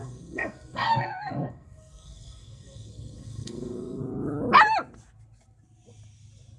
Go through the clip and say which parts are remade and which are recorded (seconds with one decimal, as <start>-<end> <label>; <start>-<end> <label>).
0.0-4.0 remade; 4.0-6.6 recorded